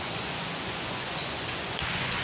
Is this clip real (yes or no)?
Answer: no